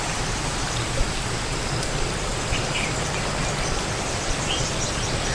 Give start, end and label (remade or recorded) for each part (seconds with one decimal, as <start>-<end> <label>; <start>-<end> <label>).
0.0-5.3 remade